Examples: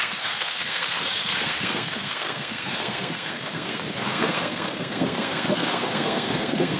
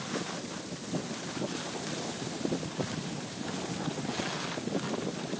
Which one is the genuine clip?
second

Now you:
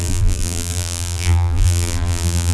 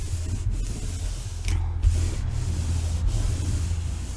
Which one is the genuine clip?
second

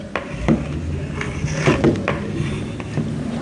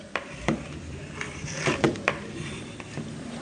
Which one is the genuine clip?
first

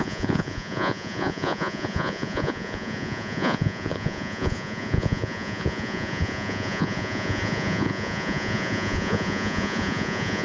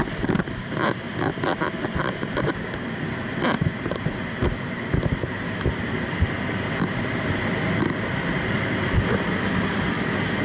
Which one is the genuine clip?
second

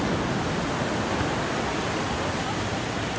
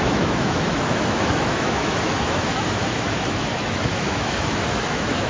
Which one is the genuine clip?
first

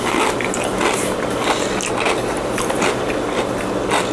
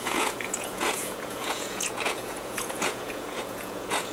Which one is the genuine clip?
first